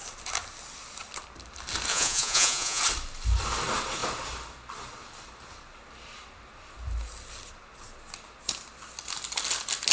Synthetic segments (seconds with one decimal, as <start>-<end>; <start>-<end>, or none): 1.9-2.8